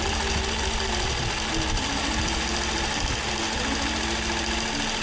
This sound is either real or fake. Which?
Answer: real